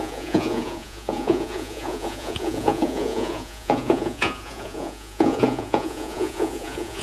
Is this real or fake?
fake